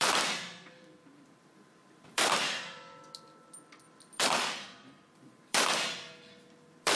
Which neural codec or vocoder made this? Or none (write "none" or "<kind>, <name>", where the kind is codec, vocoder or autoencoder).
vocoder, BigVGAN v2